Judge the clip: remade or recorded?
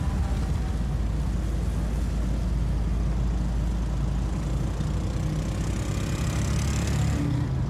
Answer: recorded